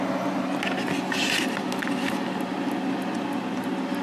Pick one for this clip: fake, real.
real